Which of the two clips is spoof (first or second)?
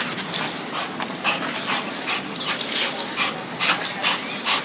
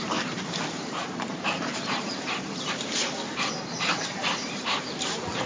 second